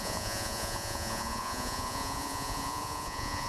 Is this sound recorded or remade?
remade